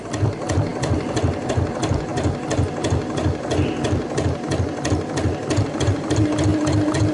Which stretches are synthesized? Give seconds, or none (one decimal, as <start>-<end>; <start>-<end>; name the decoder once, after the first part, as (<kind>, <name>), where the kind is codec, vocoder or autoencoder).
none